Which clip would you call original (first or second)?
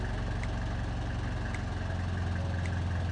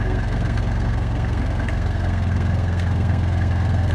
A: first